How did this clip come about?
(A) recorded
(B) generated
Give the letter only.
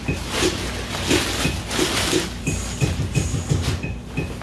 A